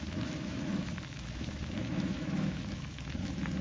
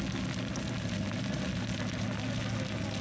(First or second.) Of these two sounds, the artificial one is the first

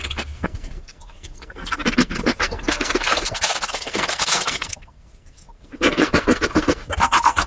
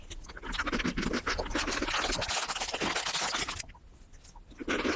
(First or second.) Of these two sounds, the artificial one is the first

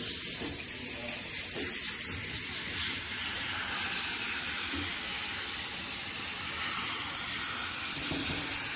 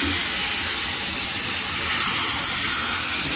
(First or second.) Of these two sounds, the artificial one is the first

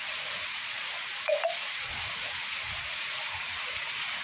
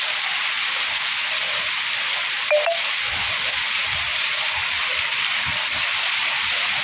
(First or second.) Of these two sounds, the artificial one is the first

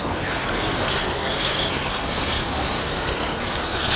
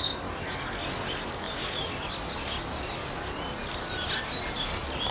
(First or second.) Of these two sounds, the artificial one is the first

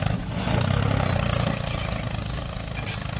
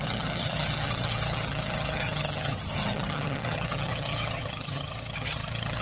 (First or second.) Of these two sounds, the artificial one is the second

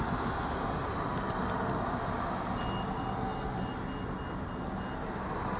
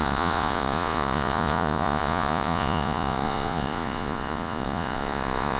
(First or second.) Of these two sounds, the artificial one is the second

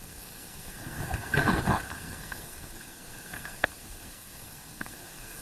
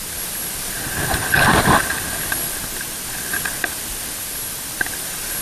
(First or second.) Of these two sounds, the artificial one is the first